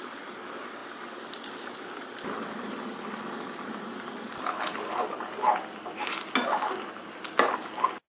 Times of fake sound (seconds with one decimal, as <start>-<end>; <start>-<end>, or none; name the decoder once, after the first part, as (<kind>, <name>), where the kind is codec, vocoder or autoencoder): none